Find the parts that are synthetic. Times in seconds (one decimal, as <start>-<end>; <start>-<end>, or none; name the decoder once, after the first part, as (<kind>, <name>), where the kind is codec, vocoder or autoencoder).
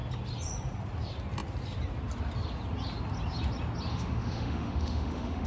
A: 3.9-5.5 (autoencoder, DAC-VAE)